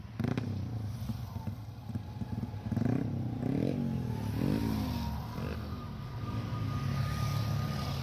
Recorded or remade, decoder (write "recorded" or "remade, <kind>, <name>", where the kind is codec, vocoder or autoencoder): recorded